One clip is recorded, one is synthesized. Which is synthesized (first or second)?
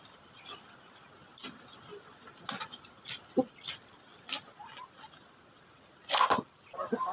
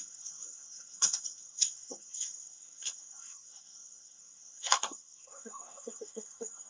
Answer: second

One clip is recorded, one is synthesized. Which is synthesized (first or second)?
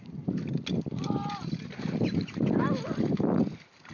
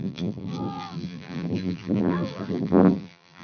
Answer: second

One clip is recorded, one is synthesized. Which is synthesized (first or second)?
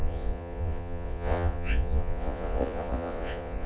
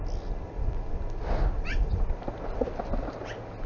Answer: first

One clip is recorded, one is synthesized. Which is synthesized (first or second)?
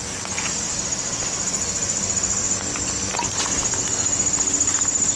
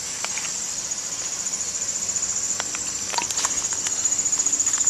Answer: second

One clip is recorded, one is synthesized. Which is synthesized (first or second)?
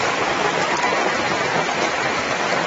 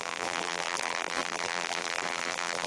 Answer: second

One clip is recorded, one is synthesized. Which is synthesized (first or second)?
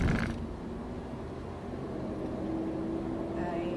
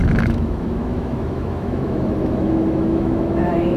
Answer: second